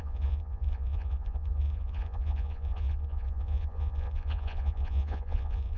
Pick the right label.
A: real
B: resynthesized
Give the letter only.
B